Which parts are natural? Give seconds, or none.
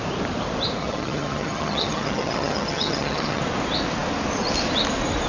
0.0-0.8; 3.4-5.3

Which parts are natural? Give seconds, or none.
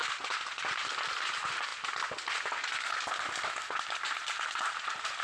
0.0-0.6; 1.7-3.8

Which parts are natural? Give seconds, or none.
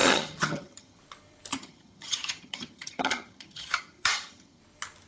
1.0-1.5; 4.6-5.1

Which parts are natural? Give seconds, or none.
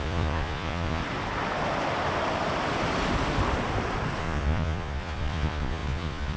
1.0-4.2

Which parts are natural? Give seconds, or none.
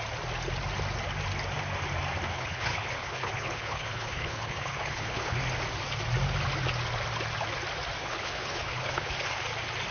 0.0-2.3; 5.4-8.0; 9.1-9.9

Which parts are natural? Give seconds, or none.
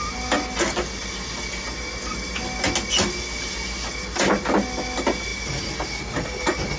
0.0-6.8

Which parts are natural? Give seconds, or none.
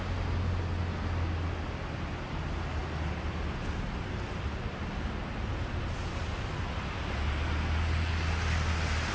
0.0-9.1